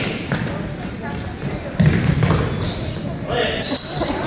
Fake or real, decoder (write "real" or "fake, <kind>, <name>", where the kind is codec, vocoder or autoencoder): real